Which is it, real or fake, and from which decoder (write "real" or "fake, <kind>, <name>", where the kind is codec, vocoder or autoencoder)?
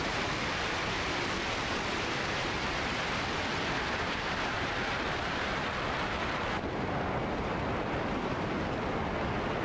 fake, vocoder, BigVGAN v2